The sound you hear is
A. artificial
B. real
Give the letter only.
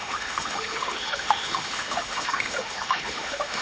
A